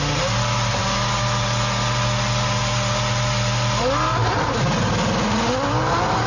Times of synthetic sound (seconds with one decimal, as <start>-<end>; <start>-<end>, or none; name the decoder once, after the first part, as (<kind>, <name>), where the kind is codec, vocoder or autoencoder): none